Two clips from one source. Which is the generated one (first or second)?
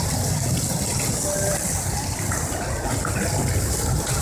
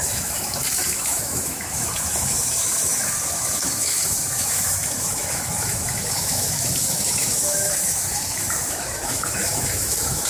second